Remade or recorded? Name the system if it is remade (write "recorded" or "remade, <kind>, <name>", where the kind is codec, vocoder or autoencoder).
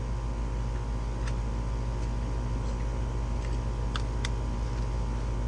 recorded